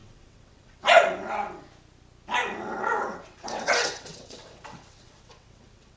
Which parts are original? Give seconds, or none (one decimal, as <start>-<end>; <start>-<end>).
1.6-2.4

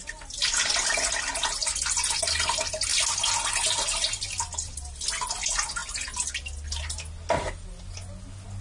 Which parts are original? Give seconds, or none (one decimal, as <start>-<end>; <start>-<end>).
0.0-8.6

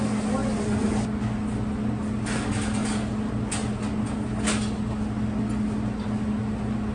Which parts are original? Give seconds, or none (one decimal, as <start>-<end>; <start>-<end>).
0.0-6.9